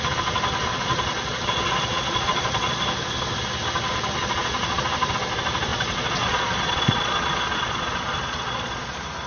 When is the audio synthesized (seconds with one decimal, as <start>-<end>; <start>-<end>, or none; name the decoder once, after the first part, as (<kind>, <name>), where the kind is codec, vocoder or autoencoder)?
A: 0.7-2.8 (vocoder, Vocos); 4.2-4.8; 5.7-8.9

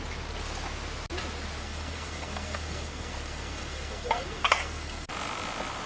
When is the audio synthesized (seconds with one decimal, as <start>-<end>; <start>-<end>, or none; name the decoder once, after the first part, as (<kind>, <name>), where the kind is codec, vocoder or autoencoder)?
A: 1.6-5.1 (codec, SNAC)

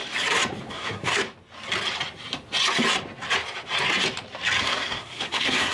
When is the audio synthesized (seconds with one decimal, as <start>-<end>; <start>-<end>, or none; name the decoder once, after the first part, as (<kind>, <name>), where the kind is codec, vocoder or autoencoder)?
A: 0.7-1.2 (codec, SNAC); 4.6-5.7

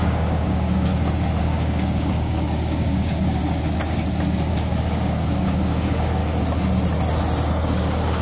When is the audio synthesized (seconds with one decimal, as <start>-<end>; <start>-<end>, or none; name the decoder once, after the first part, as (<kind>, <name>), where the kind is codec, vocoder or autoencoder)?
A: 0.0-0.9 (codec, DAC); 1.4-3.4; 4.5-6.2; 7.5-8.2

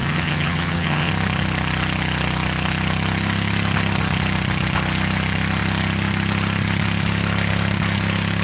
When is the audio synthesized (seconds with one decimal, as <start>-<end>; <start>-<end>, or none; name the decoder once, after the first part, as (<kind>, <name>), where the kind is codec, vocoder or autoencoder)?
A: 0.0-1.1 (vocoder, HiFi-GAN)

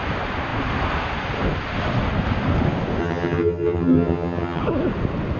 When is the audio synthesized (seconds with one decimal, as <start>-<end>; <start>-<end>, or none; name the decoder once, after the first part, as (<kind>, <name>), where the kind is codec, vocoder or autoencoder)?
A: 3.0-4.6 (vocoder, HiFi-GAN)

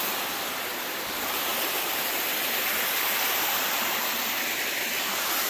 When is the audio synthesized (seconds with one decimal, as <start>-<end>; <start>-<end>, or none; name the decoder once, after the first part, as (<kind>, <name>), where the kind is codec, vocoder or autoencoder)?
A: none